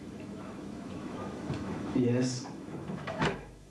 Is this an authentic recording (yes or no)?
no